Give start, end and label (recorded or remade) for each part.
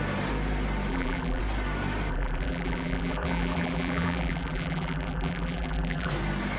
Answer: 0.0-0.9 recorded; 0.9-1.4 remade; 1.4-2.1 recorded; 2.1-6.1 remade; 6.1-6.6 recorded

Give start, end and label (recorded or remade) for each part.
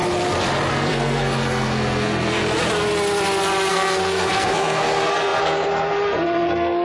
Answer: 0.0-0.7 recorded; 0.7-2.4 remade; 2.4-3.7 recorded; 3.7-6.8 remade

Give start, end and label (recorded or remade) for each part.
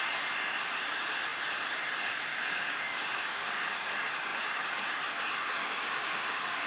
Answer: 0.0-2.3 recorded; 2.3-3.9 remade; 3.9-5.6 recorded; 5.6-6.7 remade